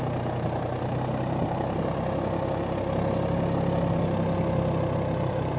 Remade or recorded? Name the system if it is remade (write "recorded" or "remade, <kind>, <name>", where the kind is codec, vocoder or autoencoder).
recorded